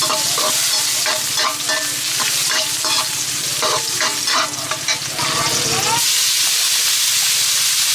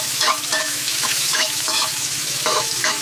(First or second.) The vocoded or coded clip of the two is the second